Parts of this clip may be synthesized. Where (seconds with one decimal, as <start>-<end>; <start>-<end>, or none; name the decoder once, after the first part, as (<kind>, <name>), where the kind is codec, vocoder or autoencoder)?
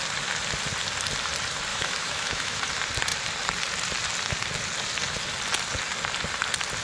1.7-2.6 (autoencoder, DAC-VAE)